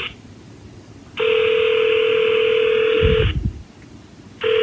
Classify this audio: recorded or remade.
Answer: recorded